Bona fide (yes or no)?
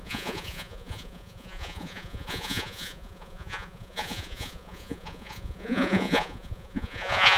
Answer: no